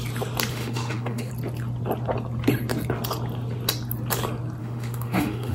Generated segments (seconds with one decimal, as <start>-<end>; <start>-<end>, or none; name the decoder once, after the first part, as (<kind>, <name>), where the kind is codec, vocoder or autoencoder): 0.5-1.3 (autoencoder, DAC-VAE); 4.6-5.5